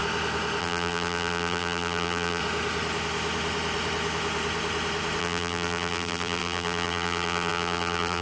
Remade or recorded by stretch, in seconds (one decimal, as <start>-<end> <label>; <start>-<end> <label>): 0.0-0.6 recorded; 0.6-2.4 remade; 2.4-5.2 recorded; 5.2-8.2 remade